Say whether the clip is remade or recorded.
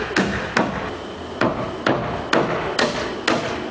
recorded